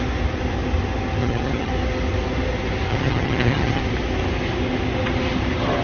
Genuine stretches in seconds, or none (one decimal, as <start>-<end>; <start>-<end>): 0.0-1.2; 1.7-2.9; 3.8-5.8